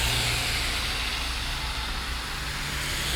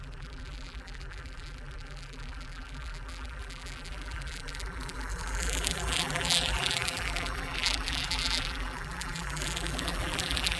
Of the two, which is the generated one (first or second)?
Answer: second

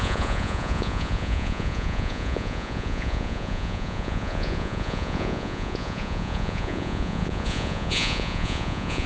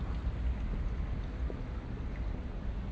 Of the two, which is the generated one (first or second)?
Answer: first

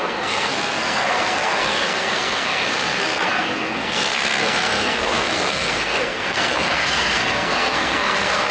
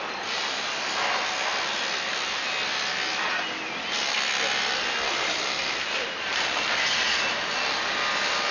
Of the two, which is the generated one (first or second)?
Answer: first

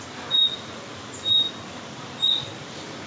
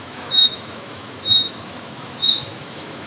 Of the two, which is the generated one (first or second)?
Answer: second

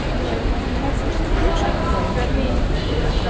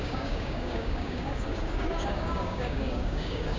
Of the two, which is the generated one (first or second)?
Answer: second